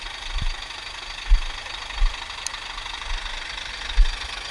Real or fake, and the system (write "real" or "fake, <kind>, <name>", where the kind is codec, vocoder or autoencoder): real